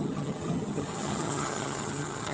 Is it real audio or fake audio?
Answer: fake